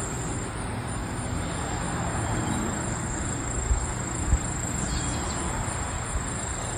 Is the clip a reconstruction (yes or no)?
no